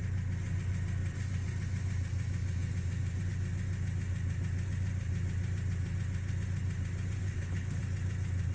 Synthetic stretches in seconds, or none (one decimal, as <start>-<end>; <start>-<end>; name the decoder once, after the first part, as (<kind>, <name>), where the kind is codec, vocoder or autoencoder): 7.2-7.8 (codec, HILCodec)